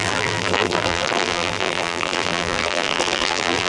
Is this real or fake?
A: fake